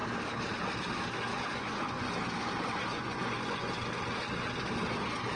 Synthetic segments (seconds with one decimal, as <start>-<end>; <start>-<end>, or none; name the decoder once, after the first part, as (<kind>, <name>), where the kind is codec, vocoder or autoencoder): 1.3-2.1 (vocoder, Vocos); 2.9-3.7